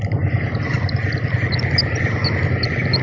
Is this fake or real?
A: real